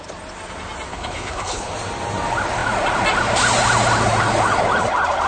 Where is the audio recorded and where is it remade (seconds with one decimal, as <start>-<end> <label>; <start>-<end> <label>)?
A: 0.0-0.9 recorded; 0.9-1.7 remade; 1.7-5.3 recorded

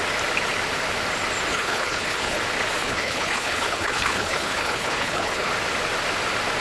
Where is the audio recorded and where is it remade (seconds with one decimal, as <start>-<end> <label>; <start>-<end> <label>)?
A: 0.0-1.5 recorded; 1.5-2.4 remade; 2.4-2.8 recorded; 2.8-5.5 remade; 5.5-6.6 recorded

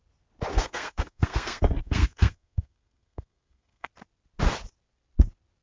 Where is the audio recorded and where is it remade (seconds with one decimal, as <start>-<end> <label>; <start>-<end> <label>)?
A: 0.0-0.5 recorded; 0.5-3.9 remade; 3.9-5.6 recorded

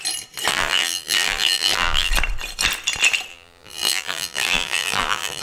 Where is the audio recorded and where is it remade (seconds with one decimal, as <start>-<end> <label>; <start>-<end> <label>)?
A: 0.0-0.5 recorded; 0.5-2.1 remade; 2.1-3.3 recorded; 3.3-5.4 remade

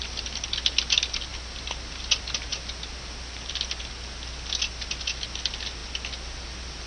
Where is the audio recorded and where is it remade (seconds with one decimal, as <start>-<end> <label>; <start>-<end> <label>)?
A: 0.0-6.9 recorded

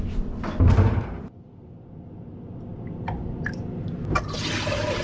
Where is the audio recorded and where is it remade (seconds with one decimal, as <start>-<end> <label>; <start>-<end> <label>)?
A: 0.0-5.0 recorded